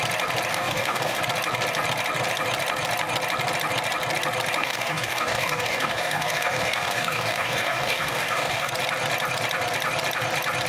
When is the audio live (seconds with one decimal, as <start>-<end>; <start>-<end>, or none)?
0.0-0.5; 1.2-4.6; 8.7-10.7